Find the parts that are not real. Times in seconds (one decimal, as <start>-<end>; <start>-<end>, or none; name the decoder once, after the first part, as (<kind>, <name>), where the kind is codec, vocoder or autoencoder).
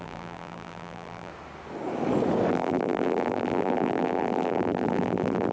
0.0-1.3 (vocoder, BigVGAN v2); 2.5-5.5